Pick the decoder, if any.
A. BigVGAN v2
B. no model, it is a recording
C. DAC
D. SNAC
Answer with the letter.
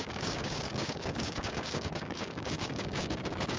C